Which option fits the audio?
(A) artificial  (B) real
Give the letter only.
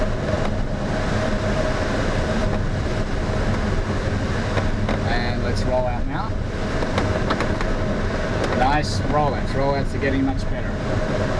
B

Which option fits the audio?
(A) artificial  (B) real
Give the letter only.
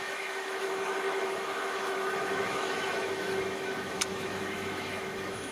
A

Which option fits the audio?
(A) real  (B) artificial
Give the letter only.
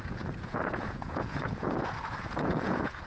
B